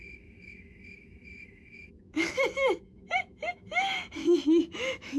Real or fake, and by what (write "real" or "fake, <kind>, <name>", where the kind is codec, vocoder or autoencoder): fake, autoencoder, DAC-VAE